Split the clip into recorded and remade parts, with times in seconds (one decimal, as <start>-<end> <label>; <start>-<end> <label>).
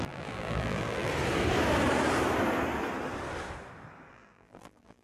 0.0-1.1 remade; 1.1-4.1 recorded; 4.1-5.0 remade